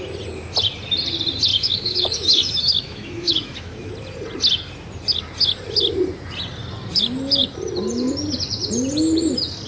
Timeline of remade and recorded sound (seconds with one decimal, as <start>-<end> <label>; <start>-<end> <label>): 0.0-1.5 recorded; 1.5-3.9 remade; 3.9-9.7 recorded